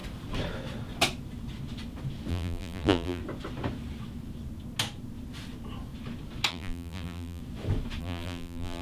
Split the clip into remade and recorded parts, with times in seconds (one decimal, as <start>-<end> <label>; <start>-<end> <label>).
0.0-2.3 recorded; 2.3-3.2 remade; 3.2-6.5 recorded; 6.5-7.4 remade; 7.4-8.0 recorded; 8.0-8.8 remade